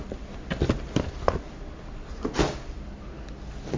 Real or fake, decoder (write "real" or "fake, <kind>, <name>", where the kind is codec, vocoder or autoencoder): real